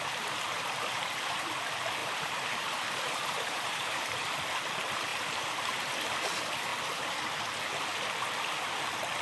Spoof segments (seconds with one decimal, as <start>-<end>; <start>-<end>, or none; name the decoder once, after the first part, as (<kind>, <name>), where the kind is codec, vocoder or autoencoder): 2.0-4.3 (vocoder, BigVGAN v2)